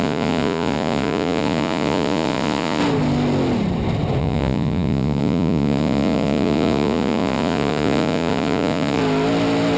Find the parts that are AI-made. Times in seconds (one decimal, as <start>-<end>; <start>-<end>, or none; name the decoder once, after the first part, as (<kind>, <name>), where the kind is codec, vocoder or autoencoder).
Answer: 0.0-2.8 (vocoder, Vocos); 4.2-9.0